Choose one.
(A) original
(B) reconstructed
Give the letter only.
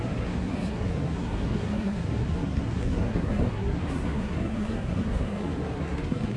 B